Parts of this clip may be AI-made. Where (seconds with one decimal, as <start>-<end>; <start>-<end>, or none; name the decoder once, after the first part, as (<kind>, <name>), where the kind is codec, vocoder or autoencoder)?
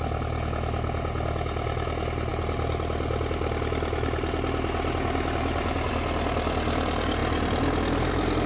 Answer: none